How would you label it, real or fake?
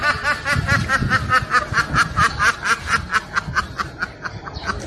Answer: real